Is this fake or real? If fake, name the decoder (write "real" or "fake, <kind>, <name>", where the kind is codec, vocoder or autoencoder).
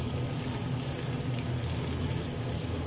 real